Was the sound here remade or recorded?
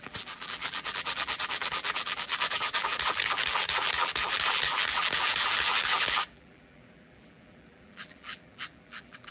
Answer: remade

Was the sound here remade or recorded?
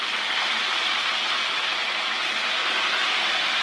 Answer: recorded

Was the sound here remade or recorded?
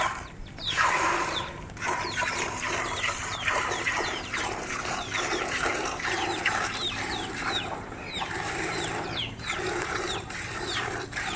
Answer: remade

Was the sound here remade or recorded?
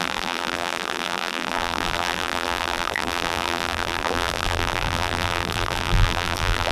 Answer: remade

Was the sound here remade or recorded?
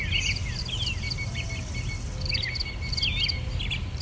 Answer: recorded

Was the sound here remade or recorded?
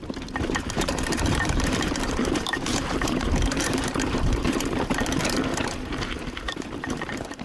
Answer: remade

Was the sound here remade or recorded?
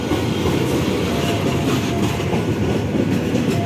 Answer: recorded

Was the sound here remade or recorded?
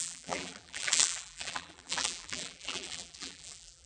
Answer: remade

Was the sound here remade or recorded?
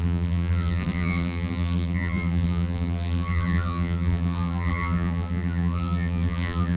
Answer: remade